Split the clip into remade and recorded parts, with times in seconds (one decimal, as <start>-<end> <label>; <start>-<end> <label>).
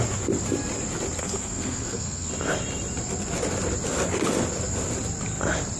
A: 0.0-1.2 recorded; 1.2-2.3 remade; 2.3-5.8 recorded